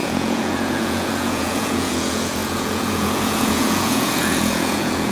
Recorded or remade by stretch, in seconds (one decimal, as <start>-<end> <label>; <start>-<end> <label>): 0.0-5.1 remade